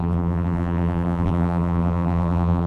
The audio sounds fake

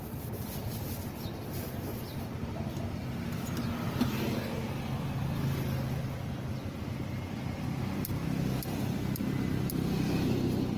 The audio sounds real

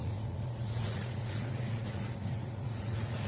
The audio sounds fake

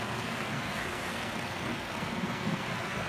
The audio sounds fake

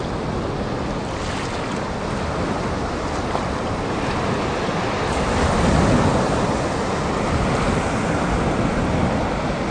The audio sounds real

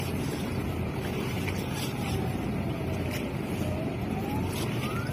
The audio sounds fake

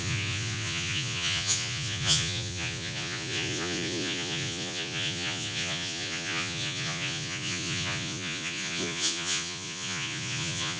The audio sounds fake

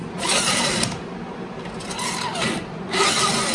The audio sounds fake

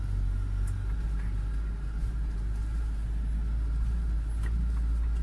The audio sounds real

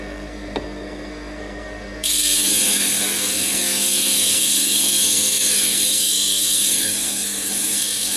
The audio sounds fake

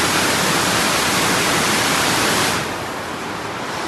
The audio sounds real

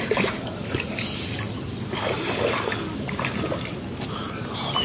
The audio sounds real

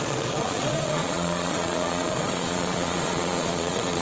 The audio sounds fake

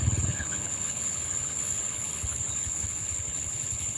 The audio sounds fake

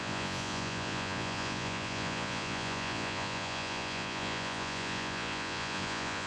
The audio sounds fake